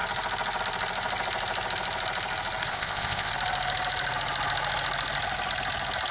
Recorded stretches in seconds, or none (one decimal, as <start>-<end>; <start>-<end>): 0.0-2.7; 3.3-6.1